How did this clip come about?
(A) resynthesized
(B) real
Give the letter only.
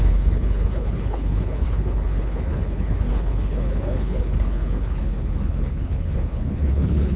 A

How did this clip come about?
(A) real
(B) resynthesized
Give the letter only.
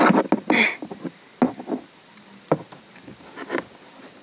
A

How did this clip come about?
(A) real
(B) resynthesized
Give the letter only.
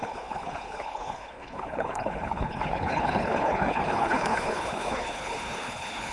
B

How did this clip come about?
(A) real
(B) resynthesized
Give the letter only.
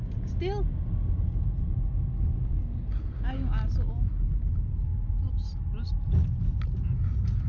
A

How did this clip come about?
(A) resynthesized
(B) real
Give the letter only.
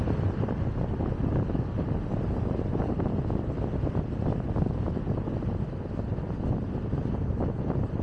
B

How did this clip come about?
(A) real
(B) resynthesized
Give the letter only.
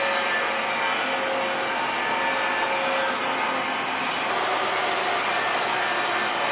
A